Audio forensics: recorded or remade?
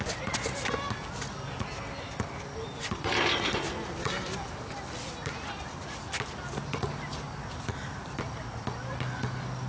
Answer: recorded